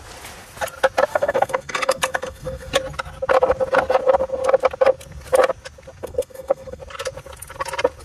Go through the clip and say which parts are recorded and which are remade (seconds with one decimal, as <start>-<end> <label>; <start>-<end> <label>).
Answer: 0.0-1.1 recorded; 1.1-2.7 remade; 2.7-6.0 recorded; 6.0-6.8 remade; 6.8-8.0 recorded

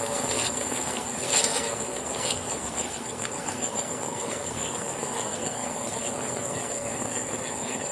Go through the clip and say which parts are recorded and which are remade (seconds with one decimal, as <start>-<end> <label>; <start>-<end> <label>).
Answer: 0.0-7.9 remade

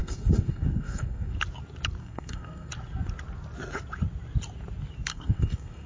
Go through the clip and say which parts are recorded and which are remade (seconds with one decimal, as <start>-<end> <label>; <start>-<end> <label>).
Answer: 0.0-1.4 remade; 1.4-2.0 recorded; 2.0-2.7 remade; 2.7-5.1 recorded; 5.1-5.9 remade